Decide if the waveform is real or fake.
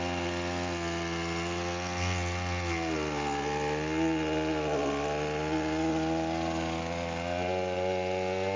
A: real